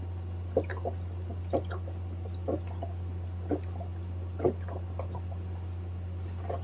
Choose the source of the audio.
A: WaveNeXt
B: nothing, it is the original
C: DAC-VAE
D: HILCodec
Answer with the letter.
B